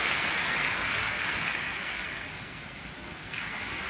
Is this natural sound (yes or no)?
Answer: no